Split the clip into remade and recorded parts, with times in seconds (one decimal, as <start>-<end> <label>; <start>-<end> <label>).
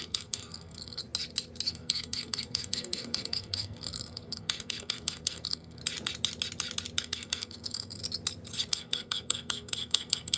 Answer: 0.0-1.0 remade; 1.0-1.7 recorded; 1.7-5.8 remade; 5.8-7.0 recorded; 7.0-8.0 remade; 8.0-8.7 recorded; 8.7-10.4 remade